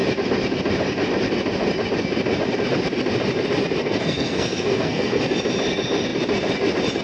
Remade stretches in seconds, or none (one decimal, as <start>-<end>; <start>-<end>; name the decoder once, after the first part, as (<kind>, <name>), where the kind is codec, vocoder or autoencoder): 3.8-5.2 (codec, SNAC)